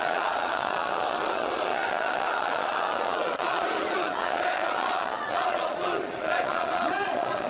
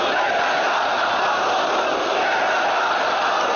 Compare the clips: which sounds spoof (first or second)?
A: first